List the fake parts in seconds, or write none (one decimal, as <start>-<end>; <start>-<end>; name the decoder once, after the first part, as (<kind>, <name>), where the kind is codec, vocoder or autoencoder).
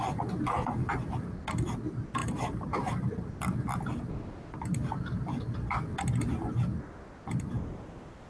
none